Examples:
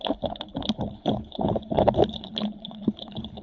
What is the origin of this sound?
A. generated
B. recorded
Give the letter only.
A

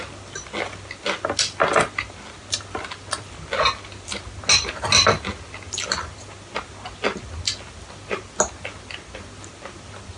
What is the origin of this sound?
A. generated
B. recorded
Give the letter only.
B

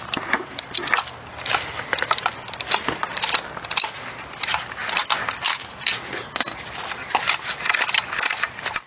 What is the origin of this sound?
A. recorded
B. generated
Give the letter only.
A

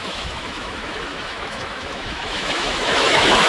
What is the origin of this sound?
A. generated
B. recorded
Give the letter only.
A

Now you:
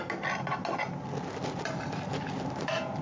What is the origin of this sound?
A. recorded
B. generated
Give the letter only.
A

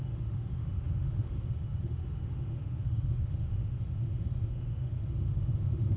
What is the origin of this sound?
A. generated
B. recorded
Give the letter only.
A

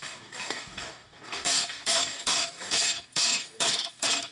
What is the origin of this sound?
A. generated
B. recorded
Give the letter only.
A